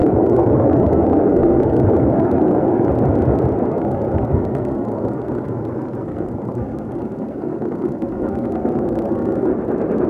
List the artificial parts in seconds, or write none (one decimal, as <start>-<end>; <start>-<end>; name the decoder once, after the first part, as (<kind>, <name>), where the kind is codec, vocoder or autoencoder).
0.0-2.9 (codec, SNAC); 3.7-9.5